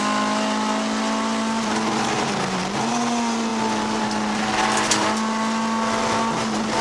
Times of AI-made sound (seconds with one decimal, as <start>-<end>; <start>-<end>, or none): none